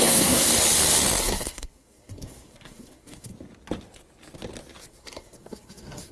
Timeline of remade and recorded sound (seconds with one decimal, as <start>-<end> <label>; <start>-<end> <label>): 0.0-0.5 remade; 0.5-1.2 recorded; 1.2-3.3 remade; 3.3-4.9 recorded; 4.9-6.1 remade